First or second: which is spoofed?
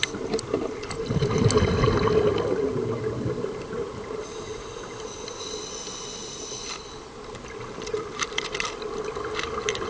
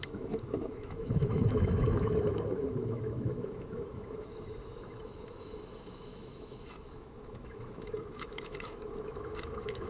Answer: second